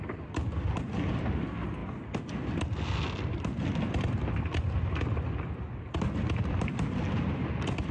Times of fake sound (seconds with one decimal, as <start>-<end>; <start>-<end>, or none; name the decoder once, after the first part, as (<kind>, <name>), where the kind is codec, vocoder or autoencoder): none